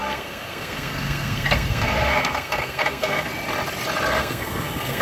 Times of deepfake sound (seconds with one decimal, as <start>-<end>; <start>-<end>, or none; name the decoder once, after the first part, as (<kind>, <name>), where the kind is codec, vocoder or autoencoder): 0.0-3.3 (codec, SNAC); 4.2-5.0